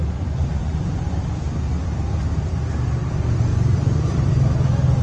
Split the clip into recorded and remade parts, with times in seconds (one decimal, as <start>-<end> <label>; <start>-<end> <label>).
0.0-0.5 recorded; 0.5-1.1 remade; 1.1-3.5 recorded; 3.5-4.1 remade; 4.1-5.0 recorded